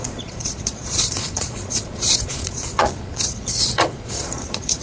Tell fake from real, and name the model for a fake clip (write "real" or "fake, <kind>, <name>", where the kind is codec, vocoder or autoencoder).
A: fake, vocoder, Vocos